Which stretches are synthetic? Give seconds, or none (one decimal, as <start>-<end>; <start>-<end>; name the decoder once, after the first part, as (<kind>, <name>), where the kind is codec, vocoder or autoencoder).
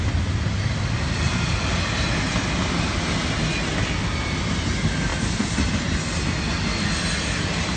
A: none